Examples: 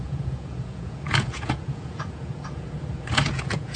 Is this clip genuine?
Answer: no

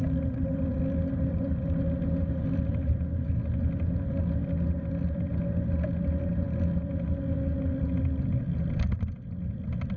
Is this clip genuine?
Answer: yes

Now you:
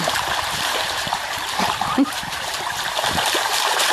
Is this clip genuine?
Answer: no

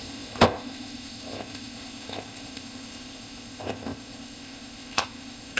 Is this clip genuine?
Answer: no